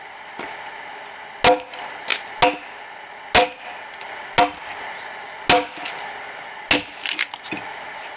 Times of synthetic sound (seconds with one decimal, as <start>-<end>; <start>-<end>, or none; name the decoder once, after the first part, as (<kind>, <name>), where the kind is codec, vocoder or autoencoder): none